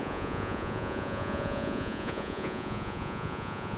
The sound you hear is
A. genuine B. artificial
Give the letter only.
B